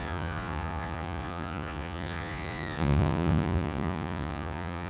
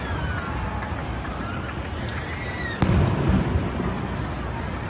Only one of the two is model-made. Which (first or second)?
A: first